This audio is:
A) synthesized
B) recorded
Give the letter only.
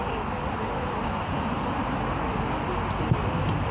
B